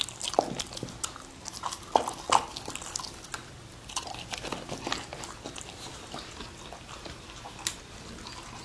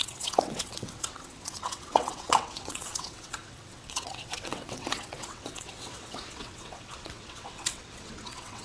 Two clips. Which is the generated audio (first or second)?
second